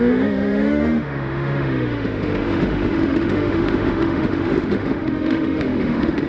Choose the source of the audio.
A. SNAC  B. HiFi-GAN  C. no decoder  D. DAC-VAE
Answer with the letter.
D